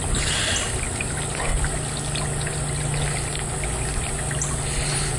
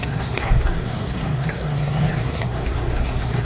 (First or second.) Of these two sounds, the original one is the first